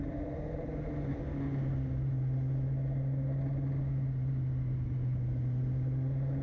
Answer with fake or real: real